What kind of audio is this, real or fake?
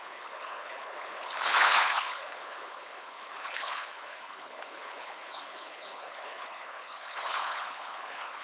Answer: fake